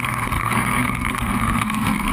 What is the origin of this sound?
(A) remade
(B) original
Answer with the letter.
A